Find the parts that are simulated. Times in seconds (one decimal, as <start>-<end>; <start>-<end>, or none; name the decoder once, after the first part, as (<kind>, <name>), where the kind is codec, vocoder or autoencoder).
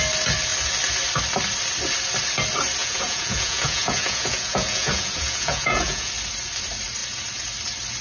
2.8-6.1 (vocoder, Vocos)